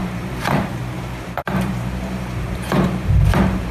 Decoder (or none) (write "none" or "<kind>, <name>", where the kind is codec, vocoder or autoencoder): vocoder, BigVGAN v2